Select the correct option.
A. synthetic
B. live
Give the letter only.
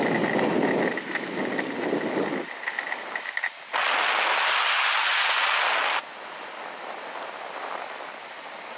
B